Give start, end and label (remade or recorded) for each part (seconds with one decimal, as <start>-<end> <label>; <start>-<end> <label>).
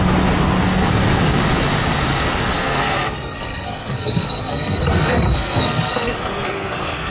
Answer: 0.0-2.5 recorded; 2.5-7.1 remade